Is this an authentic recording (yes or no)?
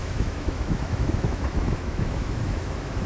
no